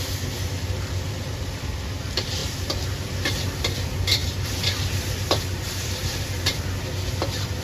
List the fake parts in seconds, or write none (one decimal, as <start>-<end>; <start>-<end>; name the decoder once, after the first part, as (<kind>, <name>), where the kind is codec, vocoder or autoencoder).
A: 0.0-7.6 (vocoder, BigVGAN v2)